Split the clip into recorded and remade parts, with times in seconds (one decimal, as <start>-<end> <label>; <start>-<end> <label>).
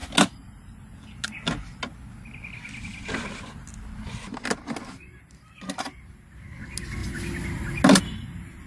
0.0-8.7 recorded